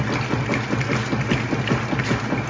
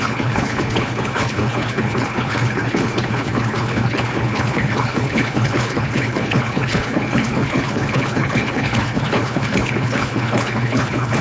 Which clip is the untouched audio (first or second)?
first